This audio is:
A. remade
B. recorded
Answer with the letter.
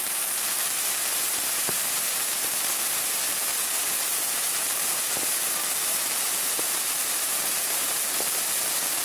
A